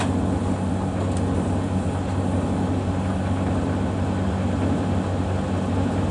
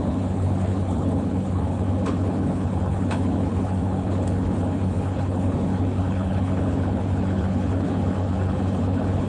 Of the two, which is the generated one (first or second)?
second